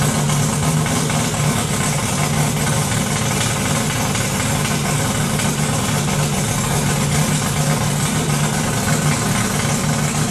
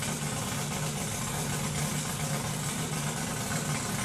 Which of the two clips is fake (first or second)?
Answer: second